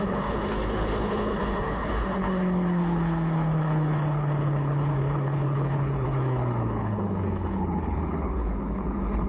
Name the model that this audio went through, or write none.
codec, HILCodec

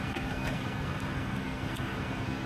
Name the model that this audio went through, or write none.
codec, SNAC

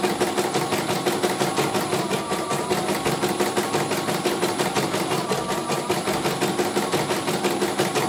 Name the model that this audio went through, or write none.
none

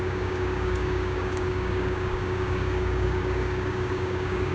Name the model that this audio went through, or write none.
codec, DAC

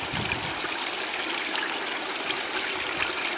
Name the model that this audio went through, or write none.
none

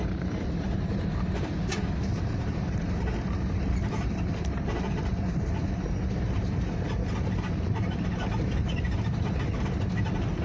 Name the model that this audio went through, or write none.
vocoder, BigVGAN v2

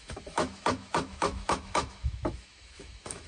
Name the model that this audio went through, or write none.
autoencoder, DAC-VAE